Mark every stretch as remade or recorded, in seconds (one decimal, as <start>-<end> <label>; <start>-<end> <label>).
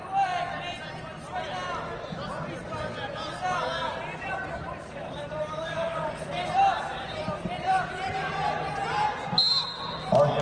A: 0.0-3.8 recorded; 3.8-7.9 remade; 7.9-10.4 recorded